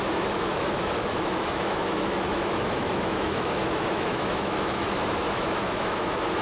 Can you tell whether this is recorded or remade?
remade